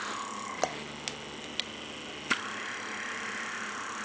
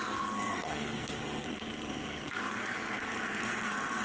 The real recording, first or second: first